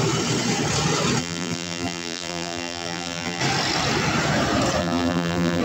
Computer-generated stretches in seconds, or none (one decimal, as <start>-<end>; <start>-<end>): 1.2-3.4; 4.8-5.6